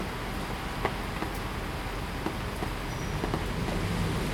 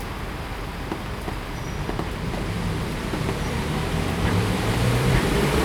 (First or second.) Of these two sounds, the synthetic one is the second